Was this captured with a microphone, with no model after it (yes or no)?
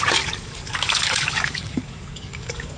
no